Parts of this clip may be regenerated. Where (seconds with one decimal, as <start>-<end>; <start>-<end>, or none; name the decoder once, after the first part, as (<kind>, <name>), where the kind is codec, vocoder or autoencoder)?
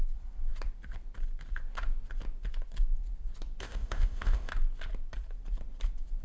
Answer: 3.6-4.5 (codec, ZipCodec)